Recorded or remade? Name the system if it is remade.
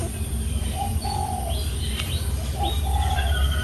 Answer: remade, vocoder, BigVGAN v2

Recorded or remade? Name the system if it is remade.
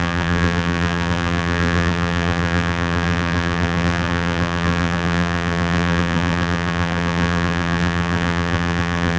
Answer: remade, vocoder, BigVGAN v2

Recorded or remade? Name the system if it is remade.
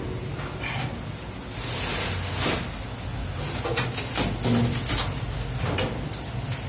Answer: recorded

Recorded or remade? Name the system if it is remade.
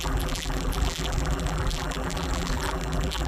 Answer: remade, vocoder, BigVGAN v2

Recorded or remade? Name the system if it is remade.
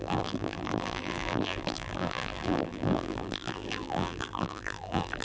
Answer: remade, vocoder, BigVGAN v2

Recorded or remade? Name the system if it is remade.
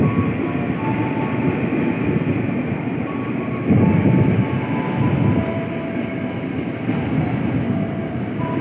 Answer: recorded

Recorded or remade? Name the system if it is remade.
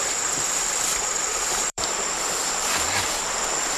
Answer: remade, vocoder, BigVGAN v2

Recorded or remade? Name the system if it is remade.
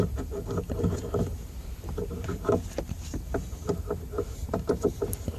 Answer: remade, vocoder, BigVGAN v2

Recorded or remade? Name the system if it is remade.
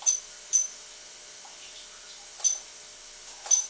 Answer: recorded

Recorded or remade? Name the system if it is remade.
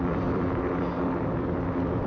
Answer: remade, vocoder, BigVGAN v2